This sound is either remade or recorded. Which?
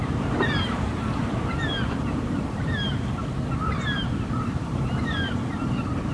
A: remade